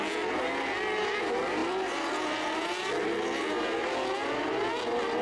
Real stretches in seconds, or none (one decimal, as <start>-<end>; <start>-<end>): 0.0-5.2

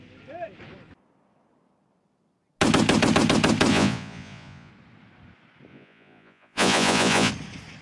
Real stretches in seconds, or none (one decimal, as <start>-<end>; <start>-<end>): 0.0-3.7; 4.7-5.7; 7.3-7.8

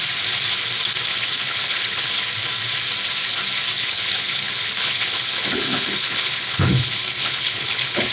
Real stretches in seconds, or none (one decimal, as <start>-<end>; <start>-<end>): 0.0-1.1; 2.1-3.8